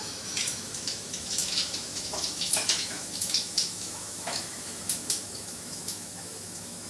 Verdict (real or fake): fake